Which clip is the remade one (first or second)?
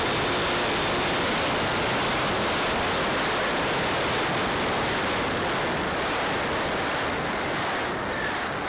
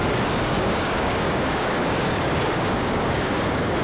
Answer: second